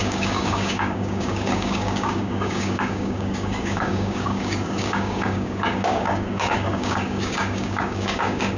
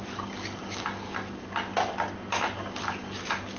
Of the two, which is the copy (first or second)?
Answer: first